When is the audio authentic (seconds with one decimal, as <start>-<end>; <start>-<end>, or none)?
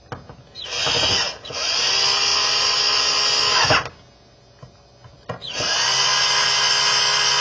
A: 0.0-7.4